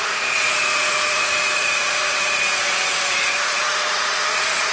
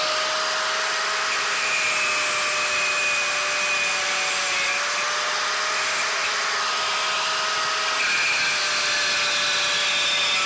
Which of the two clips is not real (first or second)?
first